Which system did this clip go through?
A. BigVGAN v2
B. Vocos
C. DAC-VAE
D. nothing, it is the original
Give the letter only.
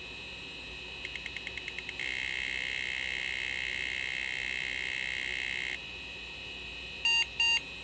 D